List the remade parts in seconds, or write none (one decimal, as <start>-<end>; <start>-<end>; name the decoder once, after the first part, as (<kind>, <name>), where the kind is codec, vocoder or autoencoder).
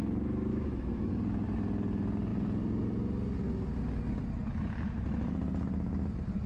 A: 0.5-1.1 (autoencoder, DAC-VAE)